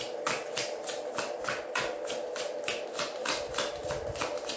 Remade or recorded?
recorded